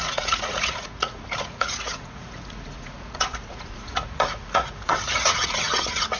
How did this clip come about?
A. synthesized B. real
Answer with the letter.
A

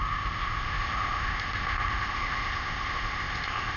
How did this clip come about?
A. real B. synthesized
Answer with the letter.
B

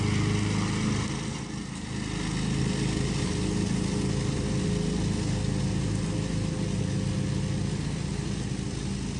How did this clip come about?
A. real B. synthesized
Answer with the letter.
A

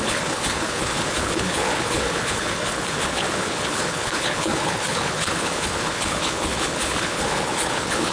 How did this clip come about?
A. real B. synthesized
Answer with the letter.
B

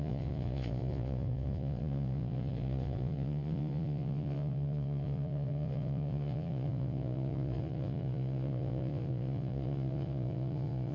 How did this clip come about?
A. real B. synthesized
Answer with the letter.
B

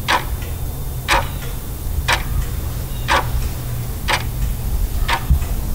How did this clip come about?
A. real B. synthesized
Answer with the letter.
A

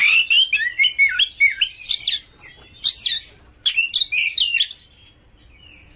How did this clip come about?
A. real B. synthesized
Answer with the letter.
A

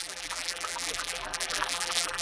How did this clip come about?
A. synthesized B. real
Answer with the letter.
A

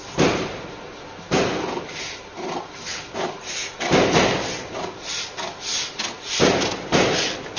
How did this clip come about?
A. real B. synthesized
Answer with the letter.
A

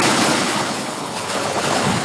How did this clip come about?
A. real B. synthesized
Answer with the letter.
B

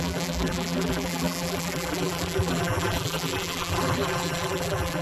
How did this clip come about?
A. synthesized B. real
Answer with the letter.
A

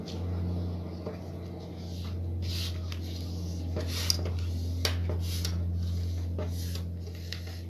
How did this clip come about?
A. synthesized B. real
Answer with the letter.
B